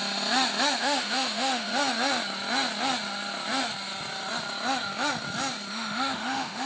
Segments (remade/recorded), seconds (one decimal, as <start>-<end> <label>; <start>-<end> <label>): 0.0-0.8 recorded; 0.8-1.7 remade; 1.7-5.7 recorded; 5.7-6.7 remade

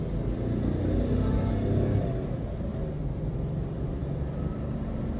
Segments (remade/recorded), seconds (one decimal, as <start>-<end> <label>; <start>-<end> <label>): 0.0-5.2 recorded

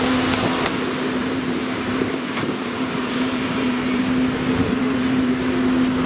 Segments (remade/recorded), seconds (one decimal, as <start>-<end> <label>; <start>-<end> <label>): 0.0-1.2 recorded; 1.2-4.0 remade; 4.0-4.6 recorded; 4.6-5.3 remade; 5.3-6.1 recorded